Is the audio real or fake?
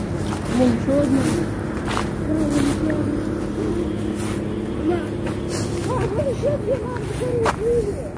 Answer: real